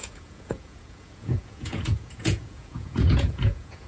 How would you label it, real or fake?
fake